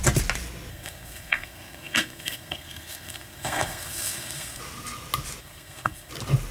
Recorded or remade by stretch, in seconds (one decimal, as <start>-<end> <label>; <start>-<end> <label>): 0.0-0.7 recorded; 0.7-4.6 remade; 4.6-5.4 recorded; 5.4-6.1 remade; 6.1-6.5 recorded